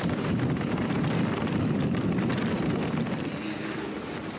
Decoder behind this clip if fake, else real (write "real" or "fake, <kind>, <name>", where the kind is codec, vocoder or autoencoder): real